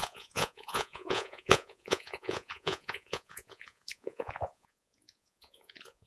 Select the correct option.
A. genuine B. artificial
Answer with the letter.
B